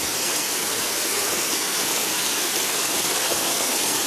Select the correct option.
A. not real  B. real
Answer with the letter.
A